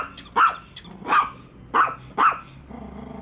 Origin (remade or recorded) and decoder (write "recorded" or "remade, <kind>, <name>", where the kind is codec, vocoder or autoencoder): recorded